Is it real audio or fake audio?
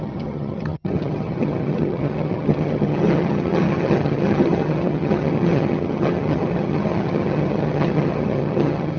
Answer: fake